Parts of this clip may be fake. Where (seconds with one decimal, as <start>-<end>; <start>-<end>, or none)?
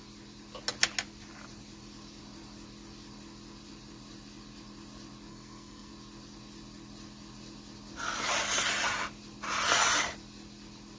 5.3-5.9